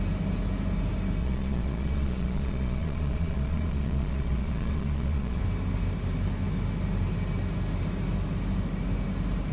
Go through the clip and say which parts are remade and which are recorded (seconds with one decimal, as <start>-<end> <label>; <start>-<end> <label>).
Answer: 0.0-1.2 recorded; 1.2-5.4 remade; 5.4-9.5 recorded